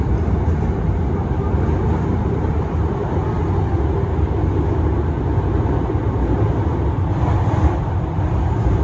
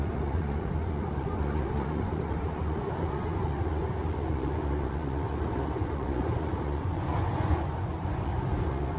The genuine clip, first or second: first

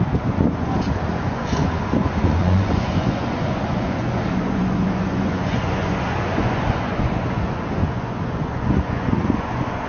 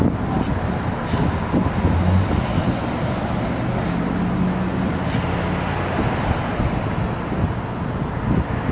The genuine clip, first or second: second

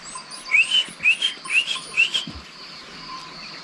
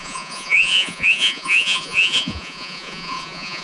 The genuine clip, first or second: first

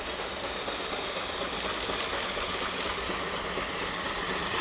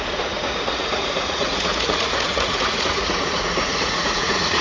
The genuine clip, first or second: first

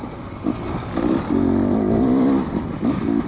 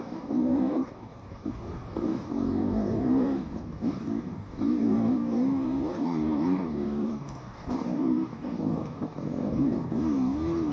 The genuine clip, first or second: first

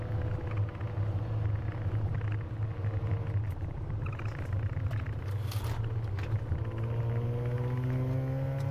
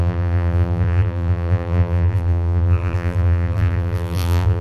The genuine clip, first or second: first